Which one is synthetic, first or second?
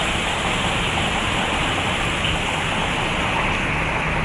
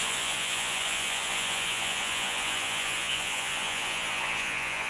second